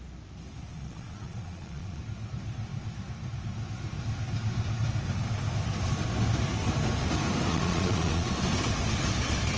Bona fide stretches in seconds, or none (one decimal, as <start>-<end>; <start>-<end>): 0.0-0.7; 2.0-7.5; 8.3-9.6